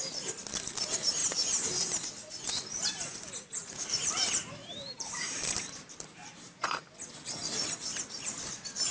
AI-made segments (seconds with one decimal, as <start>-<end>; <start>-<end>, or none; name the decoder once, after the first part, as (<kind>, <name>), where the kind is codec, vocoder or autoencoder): 3.6-6.8 (vocoder, BigVGAN v2)

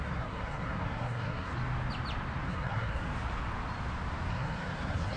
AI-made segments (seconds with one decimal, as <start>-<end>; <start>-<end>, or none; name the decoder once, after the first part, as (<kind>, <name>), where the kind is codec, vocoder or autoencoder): 0.0-1.5 (codec, SNAC); 2.5-3.1; 4.3-5.2

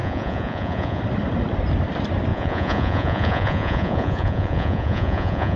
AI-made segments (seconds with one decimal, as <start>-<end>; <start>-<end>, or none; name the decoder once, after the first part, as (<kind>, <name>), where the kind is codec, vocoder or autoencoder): 0.0-1.0 (vocoder, Vocos); 2.3-5.6